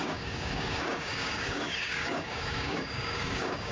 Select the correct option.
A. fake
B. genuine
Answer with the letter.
A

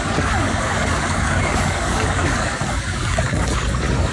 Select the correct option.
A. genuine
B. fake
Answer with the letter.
B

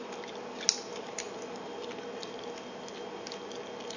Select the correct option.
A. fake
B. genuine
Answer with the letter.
B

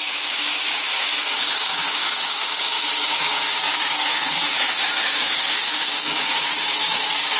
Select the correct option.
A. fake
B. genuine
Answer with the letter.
A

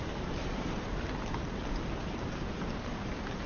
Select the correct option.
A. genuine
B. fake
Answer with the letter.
A